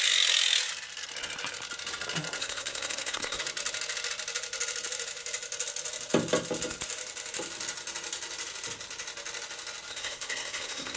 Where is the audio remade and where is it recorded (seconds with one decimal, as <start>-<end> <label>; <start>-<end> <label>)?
0.0-2.4 recorded; 2.4-3.4 remade; 3.4-9.9 recorded; 9.9-11.0 remade

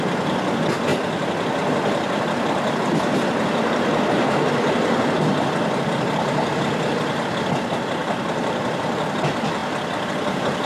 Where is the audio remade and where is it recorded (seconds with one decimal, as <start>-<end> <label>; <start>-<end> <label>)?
0.0-0.9 recorded; 0.9-5.0 remade; 5.0-8.0 recorded; 8.0-9.0 remade; 9.0-10.7 recorded

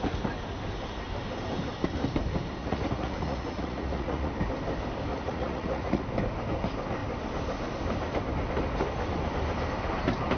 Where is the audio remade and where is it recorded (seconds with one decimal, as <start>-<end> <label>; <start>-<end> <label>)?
0.0-2.6 recorded; 2.6-4.3 remade; 4.3-5.1 recorded; 5.1-6.0 remade; 6.0-10.4 recorded

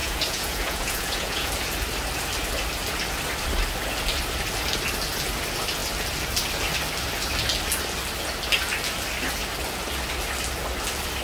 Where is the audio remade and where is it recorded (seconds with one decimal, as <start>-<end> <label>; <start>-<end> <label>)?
0.0-1.5 remade; 1.5-11.2 recorded

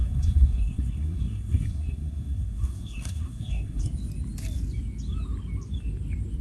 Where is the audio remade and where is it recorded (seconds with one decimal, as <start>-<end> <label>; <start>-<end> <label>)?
0.0-3.8 remade; 3.8-6.4 recorded